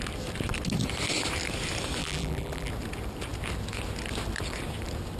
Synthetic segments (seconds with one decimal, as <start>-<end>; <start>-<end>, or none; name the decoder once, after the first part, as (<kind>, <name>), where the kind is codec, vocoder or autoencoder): 2.0-2.7 (vocoder, BigVGAN v2)